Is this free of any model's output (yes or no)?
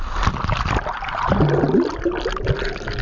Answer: yes